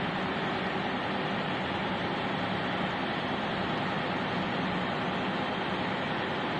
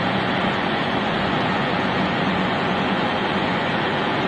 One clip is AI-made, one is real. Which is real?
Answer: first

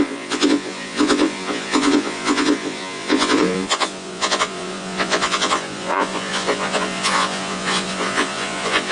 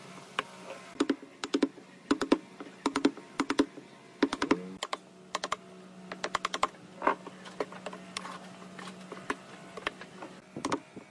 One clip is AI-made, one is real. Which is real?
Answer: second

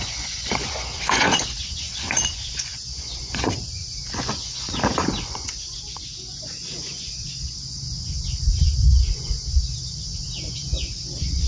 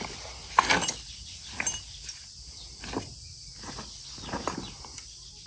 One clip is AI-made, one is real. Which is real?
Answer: second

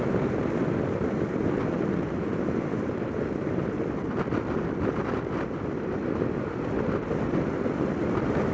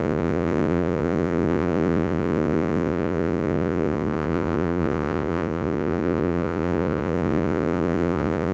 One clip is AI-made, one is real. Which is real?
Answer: first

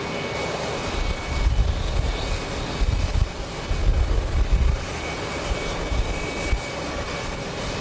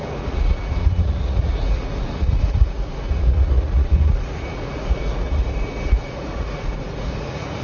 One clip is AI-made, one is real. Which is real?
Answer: first